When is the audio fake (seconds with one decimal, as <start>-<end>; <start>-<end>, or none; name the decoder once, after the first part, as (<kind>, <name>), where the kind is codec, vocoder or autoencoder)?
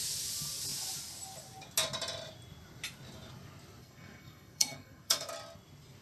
3.8-5.3 (codec, SNAC)